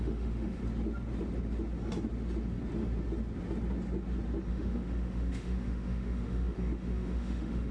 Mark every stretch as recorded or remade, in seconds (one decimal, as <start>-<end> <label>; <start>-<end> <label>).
0.0-0.6 remade; 0.6-4.5 recorded; 4.5-7.7 remade